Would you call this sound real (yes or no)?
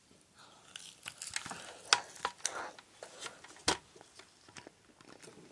yes